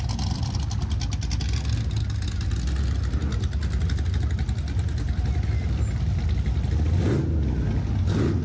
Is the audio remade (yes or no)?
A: no